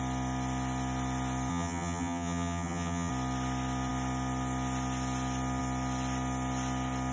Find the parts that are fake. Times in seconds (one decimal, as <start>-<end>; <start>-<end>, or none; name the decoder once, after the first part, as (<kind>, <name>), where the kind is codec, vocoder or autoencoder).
1.5-3.1 (vocoder, HiFi-GAN)